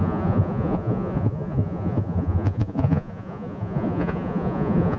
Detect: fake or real fake